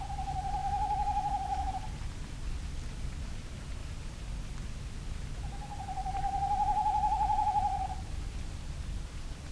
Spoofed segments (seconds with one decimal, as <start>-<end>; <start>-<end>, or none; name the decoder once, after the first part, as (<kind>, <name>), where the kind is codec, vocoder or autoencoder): 0.6-1.7 (autoencoder, DAC-VAE)